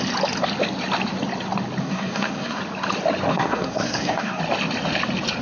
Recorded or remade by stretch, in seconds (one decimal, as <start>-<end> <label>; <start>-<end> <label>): 0.0-1.8 recorded; 1.8-2.6 remade; 2.6-3.3 recorded; 3.3-4.4 remade; 4.4-5.4 recorded